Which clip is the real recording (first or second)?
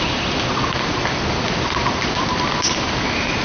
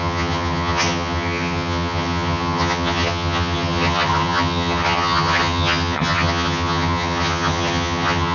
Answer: first